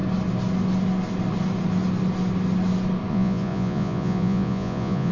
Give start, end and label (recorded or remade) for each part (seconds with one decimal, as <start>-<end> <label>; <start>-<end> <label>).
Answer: 0.0-3.1 recorded; 3.1-5.1 remade